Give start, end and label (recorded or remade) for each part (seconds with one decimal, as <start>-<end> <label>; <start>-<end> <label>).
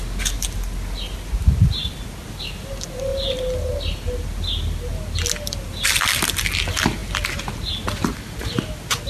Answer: 0.0-9.1 recorded